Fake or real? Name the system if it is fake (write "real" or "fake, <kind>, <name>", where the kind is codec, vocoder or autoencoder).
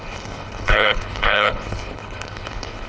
fake, codec, HILCodec